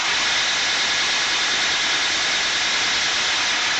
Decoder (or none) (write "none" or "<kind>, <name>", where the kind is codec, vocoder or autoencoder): none